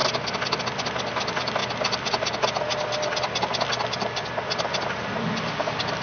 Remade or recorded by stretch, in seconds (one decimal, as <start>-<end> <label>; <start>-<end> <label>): 0.0-6.0 recorded